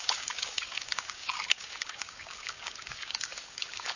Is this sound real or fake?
fake